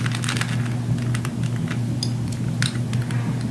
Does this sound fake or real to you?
real